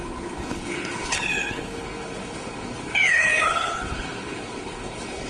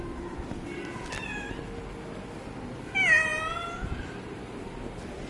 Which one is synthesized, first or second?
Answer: first